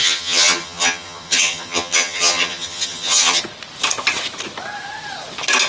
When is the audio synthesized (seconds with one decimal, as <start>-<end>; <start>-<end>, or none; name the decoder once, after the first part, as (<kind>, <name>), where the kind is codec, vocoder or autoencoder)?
0.0-3.4 (vocoder, HiFi-GAN)